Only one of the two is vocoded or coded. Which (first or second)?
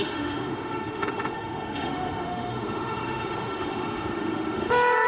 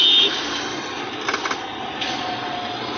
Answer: first